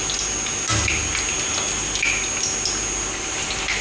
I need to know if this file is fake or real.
real